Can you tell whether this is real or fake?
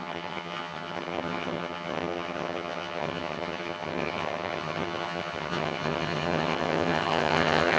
fake